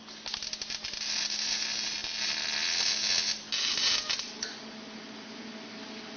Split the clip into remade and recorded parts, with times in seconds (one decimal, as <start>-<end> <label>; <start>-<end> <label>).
0.0-6.2 recorded

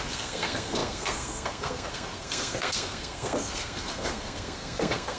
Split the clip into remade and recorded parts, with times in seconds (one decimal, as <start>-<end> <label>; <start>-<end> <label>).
0.0-5.2 remade

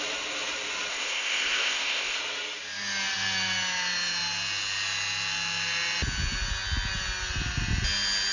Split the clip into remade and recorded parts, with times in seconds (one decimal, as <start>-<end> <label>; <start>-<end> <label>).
0.0-0.9 recorded; 0.9-2.2 remade; 2.2-8.3 recorded

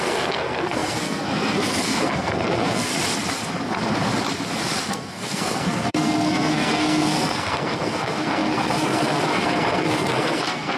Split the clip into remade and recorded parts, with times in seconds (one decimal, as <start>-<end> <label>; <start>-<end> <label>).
0.0-2.9 remade; 2.9-4.9 recorded; 4.9-10.8 remade

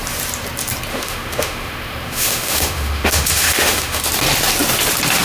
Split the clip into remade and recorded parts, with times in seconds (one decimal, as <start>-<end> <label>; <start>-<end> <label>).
0.0-0.9 recorded; 0.9-4.0 remade; 4.0-5.2 recorded

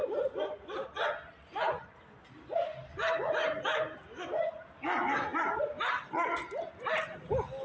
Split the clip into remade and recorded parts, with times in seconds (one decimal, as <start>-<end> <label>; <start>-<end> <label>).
0.0-7.6 recorded

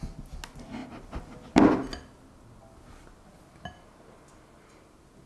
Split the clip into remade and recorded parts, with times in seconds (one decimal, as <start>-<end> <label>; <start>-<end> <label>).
0.0-5.3 recorded

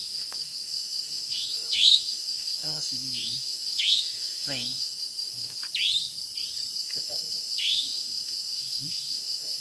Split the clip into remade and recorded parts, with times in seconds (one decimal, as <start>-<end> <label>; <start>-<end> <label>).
0.0-5.6 remade; 5.6-6.8 recorded; 6.8-9.6 remade